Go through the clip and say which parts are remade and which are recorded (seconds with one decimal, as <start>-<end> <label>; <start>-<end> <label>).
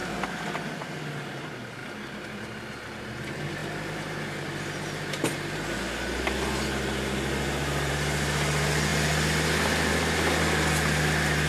0.0-11.5 recorded